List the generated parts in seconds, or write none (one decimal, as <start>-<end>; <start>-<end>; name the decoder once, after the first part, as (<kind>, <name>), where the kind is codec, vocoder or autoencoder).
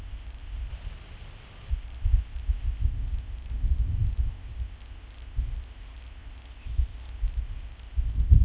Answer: 0.0-0.7 (codec, ZipCodec); 1.7-8.4